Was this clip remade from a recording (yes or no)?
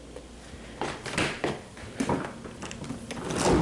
no